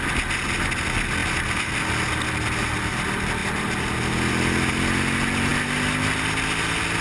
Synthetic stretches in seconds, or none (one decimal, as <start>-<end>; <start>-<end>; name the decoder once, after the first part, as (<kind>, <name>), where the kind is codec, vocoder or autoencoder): none